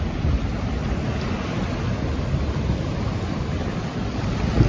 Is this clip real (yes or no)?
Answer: yes